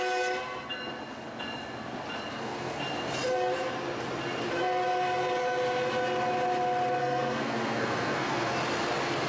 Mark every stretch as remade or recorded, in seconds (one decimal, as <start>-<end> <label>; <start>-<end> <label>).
0.0-2.3 recorded; 2.3-2.8 remade; 2.8-7.0 recorded; 7.0-8.5 remade; 8.5-9.3 recorded